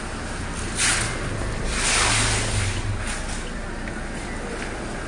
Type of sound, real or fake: real